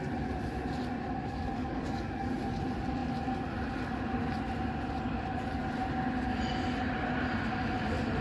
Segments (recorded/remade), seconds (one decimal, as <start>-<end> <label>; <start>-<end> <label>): 0.0-1.2 recorded; 1.2-2.3 remade; 2.3-8.2 recorded